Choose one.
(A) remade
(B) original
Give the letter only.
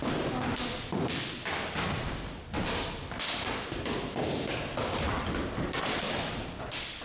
B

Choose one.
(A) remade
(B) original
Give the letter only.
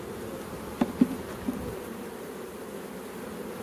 B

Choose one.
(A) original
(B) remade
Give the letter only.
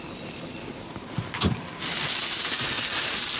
A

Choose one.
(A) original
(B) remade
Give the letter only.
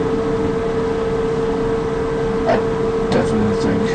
A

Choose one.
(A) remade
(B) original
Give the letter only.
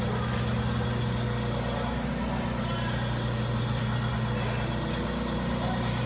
B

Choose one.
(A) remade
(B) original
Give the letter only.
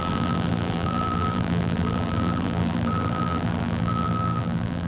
A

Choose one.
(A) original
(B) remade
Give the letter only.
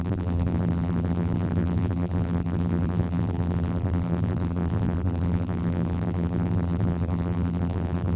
B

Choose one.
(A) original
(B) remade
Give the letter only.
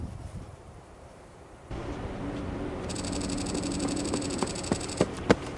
B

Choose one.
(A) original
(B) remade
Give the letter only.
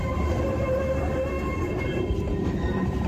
B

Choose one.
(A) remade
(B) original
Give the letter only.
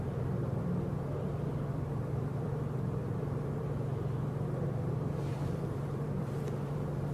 A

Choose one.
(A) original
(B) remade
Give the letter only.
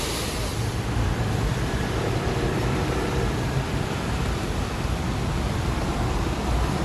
B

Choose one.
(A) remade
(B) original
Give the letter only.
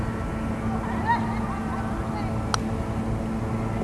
B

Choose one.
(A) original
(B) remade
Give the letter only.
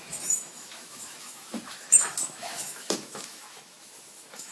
B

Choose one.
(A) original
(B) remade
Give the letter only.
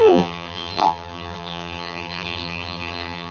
B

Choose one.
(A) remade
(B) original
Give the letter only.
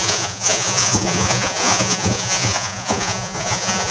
A